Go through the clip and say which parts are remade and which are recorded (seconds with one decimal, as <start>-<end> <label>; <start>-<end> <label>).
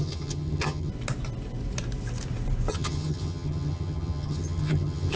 0.0-0.9 remade; 0.9-2.7 recorded; 2.7-5.2 remade